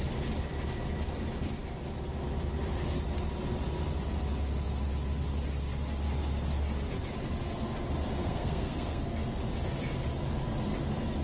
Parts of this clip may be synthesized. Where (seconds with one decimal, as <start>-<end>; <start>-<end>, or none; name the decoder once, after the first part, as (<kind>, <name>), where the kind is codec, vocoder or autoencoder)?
8.2-9.0 (codec, SNAC)

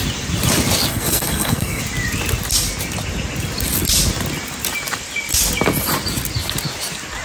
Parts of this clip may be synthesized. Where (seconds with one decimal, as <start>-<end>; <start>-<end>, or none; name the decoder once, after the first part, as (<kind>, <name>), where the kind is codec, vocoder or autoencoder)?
0.9-1.8 (codec, SNAC)